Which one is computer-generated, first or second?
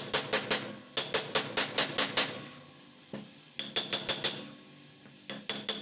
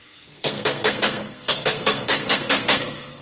second